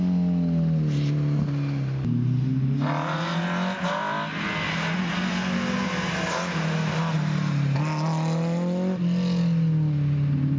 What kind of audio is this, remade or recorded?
recorded